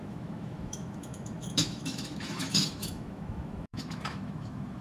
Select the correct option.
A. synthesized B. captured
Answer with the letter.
A